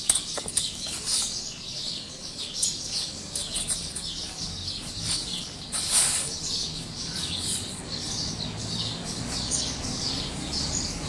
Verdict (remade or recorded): remade